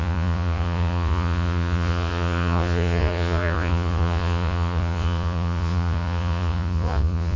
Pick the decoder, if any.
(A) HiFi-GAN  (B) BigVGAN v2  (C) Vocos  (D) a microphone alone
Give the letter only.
C